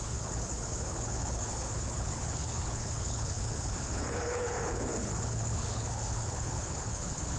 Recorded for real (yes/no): no